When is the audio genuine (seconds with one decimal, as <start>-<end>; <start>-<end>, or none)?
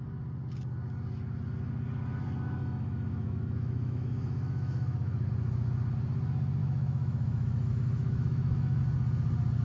0.0-2.6; 5.3-6.6; 8.8-9.6